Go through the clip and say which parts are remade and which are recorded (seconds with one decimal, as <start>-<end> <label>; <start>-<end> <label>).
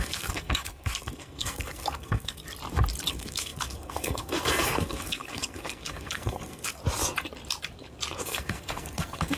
0.0-2.4 remade; 2.4-3.1 recorded; 3.1-6.8 remade; 6.8-8.2 recorded; 8.2-9.4 remade